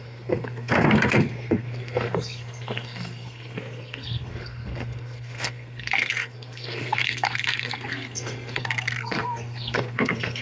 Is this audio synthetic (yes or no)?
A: yes